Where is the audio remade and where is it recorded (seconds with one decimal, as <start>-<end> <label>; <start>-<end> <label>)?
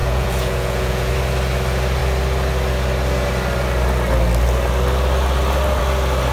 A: 0.0-1.1 remade; 1.1-6.3 recorded